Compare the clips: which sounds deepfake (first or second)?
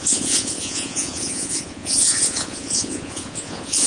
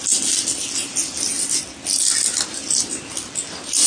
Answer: first